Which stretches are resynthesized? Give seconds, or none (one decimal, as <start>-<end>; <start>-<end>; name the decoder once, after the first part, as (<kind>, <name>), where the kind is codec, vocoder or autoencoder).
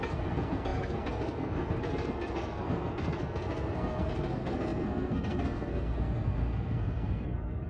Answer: 0.0-7.7 (codec, SNAC)